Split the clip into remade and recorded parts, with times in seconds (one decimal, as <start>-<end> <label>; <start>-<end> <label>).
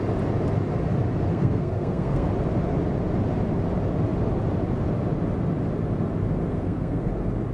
0.0-1.3 recorded; 1.3-2.3 remade; 2.3-6.4 recorded; 6.4-7.1 remade; 7.1-7.5 recorded